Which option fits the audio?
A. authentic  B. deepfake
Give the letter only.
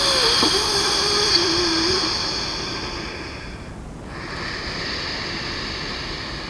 A